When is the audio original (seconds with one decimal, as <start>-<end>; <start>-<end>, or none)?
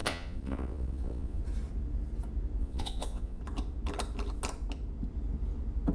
1.4-2.6; 3.4-5.9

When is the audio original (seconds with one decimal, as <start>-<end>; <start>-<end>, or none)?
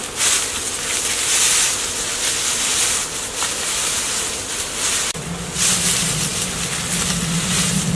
0.0-7.9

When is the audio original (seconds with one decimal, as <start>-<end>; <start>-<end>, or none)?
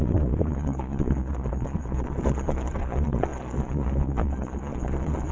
none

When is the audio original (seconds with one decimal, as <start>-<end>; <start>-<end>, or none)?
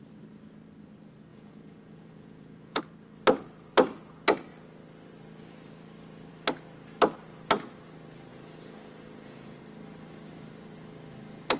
0.0-1.3; 2.8-8.3; 9.6-11.6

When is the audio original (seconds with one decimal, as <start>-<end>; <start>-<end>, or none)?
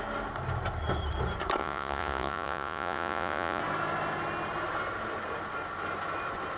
0.0-1.6; 3.6-6.6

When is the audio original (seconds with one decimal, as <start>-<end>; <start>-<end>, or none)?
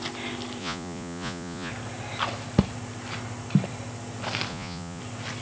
0.0-0.6; 1.7-4.5; 5.0-5.4